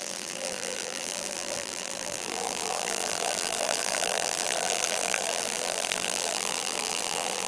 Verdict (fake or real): fake